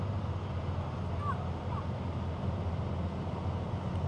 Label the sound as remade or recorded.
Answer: recorded